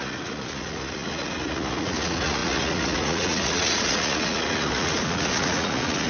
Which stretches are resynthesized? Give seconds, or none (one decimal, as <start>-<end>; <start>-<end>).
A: 0.0-6.1